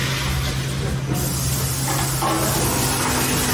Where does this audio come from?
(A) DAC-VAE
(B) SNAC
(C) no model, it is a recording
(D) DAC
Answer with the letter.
C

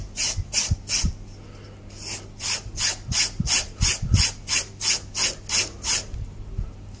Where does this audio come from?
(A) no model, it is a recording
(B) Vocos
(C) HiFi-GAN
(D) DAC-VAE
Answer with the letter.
A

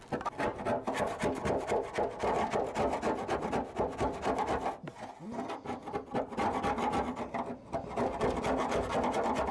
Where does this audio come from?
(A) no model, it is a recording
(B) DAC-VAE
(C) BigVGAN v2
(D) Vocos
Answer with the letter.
A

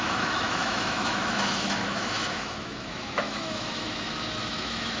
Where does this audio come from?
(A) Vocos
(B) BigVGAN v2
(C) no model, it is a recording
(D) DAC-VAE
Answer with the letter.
D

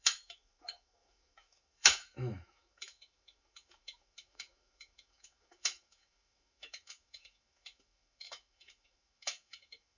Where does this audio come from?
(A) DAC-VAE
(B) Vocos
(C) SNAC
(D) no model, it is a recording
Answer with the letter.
A